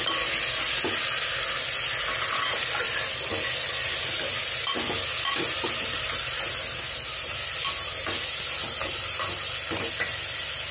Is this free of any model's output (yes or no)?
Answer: yes